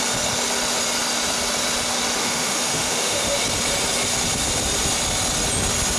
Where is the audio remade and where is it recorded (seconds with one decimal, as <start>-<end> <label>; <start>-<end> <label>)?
0.0-2.2 recorded; 2.2-3.4 remade; 3.4-6.0 recorded